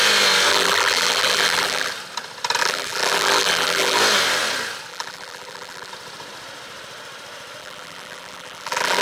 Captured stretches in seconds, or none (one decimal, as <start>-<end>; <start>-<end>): 0.0-0.5; 1.9-2.6; 4.0-4.9; 5.9-7.6